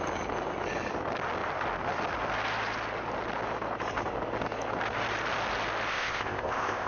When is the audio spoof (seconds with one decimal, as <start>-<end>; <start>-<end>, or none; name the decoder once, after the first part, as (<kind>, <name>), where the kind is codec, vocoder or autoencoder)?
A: 5.9-6.9 (codec, ZipCodec)